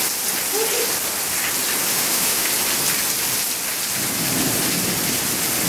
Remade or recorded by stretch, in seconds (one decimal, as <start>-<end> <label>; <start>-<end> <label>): 0.0-1.9 recorded; 1.9-2.5 remade; 2.5-5.7 recorded